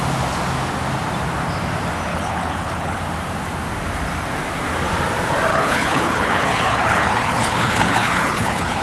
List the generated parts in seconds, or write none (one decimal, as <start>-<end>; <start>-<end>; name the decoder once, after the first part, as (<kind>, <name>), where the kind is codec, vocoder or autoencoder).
2.1-3.0 (codec, HILCodec); 5.5-8.8